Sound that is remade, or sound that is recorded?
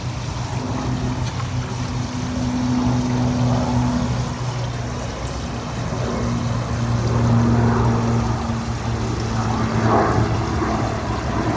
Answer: recorded